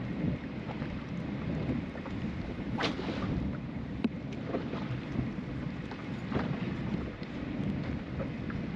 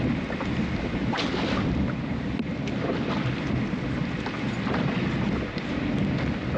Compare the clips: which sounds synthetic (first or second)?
first